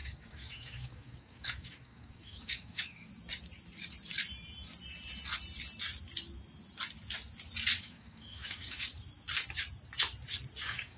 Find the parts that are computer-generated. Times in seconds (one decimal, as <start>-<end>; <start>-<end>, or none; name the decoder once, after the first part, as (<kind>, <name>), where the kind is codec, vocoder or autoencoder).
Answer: 0.0-3.1 (codec, DAC); 7.8-8.9; 10.6-11.0